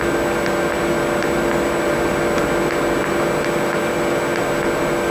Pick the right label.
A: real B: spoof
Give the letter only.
A